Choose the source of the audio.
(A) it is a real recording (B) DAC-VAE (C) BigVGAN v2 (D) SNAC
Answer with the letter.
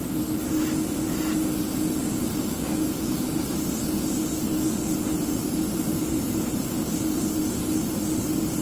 A